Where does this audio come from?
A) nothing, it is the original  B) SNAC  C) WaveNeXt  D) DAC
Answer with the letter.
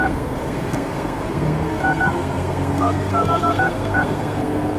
B